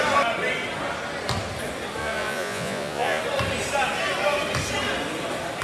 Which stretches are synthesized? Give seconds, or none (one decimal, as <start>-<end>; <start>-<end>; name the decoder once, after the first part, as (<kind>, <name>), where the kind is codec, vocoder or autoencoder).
2.0-3.2 (vocoder, Vocos)